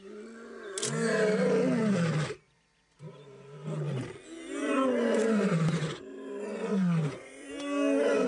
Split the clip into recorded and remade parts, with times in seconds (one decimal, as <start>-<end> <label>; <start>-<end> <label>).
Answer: 0.0-4.6 recorded; 4.6-6.0 remade; 6.0-6.7 recorded; 6.7-7.5 remade; 7.5-8.3 recorded